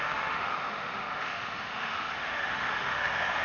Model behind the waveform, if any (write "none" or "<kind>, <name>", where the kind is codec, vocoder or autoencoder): autoencoder, DAC-VAE